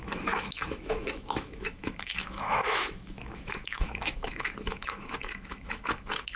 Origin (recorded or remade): remade